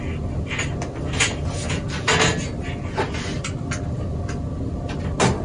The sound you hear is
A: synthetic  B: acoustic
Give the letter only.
B